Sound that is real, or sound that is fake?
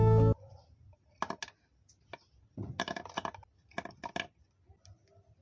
real